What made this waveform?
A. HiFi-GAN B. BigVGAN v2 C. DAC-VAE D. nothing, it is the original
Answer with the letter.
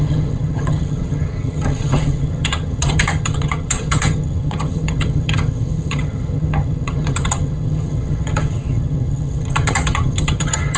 A